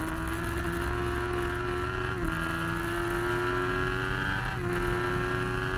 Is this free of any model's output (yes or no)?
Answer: yes